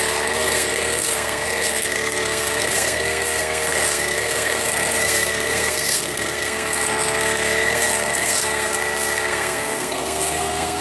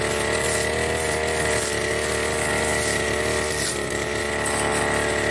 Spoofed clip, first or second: first